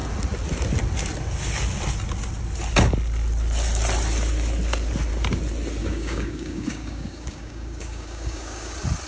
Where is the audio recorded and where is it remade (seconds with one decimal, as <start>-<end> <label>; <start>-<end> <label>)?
0.0-5.8 recorded; 5.8-8.7 remade; 8.7-9.1 recorded